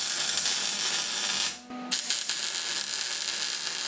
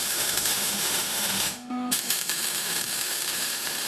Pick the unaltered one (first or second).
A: first